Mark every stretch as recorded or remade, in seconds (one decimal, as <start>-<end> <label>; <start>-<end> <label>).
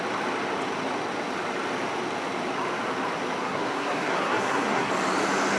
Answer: 0.0-3.4 recorded; 3.4-4.9 remade; 4.9-5.6 recorded